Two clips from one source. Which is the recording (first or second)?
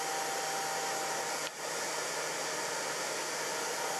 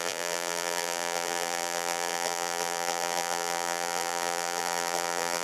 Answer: first